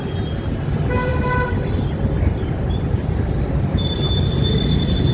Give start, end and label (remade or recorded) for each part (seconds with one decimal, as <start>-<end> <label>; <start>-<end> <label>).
0.0-1.1 recorded; 1.1-4.2 remade; 4.2-5.1 recorded